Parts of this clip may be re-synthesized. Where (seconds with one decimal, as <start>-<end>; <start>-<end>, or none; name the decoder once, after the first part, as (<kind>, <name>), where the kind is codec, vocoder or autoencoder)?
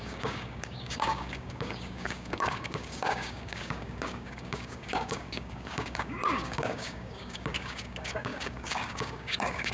0.0-9.7 (codec, DAC)